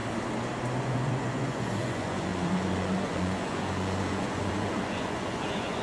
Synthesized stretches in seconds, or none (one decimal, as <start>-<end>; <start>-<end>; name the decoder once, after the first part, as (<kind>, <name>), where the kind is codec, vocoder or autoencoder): 0.8-5.8 (vocoder, Vocos)